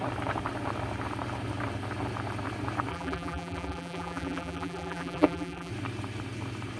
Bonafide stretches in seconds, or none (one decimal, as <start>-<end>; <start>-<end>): 0.0-2.9; 5.7-6.8